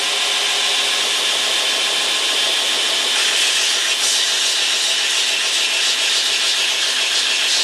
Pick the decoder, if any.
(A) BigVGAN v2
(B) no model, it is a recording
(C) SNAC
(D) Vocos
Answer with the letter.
B